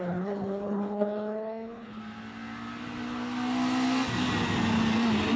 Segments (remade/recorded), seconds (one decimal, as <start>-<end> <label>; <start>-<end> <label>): 0.0-2.0 remade; 2.0-5.4 recorded